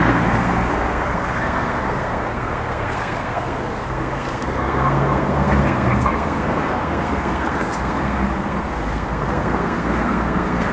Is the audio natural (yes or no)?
no